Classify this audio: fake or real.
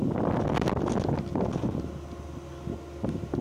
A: real